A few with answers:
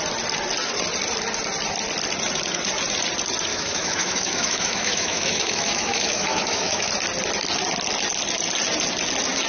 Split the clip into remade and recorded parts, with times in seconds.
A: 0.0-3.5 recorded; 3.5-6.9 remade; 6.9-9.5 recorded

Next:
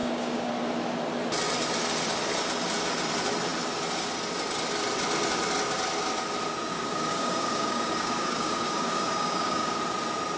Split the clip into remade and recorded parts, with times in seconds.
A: 0.0-0.5 remade; 0.5-6.7 recorded; 6.7-9.8 remade; 9.8-10.4 recorded

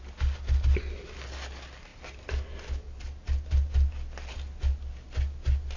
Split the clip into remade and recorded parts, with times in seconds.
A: 0.0-5.8 recorded

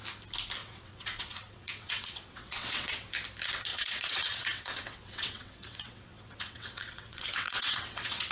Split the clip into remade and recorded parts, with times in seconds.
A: 0.0-0.6 recorded; 0.6-3.1 remade; 3.1-3.7 recorded; 3.7-8.3 remade

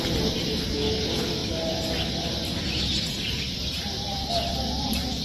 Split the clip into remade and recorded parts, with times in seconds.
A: 0.0-5.2 recorded